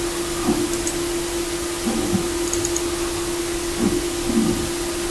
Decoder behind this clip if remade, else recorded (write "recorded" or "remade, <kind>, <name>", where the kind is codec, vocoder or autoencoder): recorded